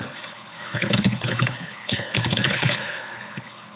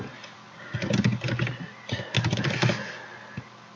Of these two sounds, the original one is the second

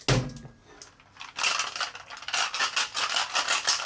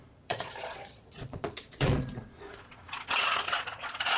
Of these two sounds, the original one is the first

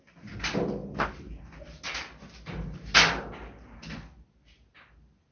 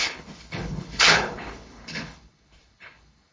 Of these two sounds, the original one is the first